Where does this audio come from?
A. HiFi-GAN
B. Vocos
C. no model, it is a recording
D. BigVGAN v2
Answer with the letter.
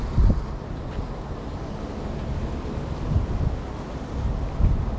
C